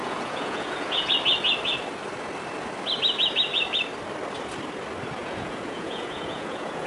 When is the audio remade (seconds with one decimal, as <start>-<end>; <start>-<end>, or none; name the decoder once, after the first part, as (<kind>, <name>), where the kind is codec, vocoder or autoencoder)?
0.0-1.1 (vocoder, Vocos); 5.2-6.9